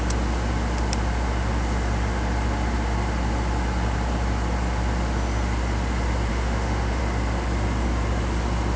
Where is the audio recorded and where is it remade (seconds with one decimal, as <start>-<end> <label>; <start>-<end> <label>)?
0.0-6.3 recorded; 6.3-7.0 remade; 7.0-8.8 recorded